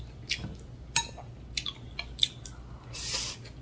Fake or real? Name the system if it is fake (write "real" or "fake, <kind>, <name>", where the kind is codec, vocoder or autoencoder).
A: real